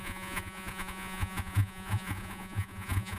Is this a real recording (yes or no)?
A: no